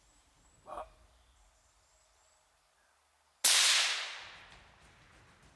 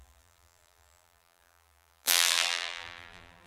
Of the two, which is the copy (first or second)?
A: second